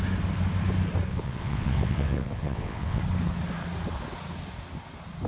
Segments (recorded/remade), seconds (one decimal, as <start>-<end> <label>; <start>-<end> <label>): 0.0-1.1 recorded; 1.1-3.0 remade; 3.0-5.3 recorded